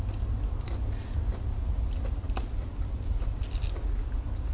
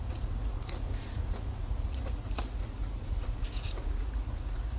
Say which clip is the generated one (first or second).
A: second